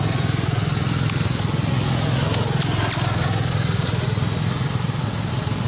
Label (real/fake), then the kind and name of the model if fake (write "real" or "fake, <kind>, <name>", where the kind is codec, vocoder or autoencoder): real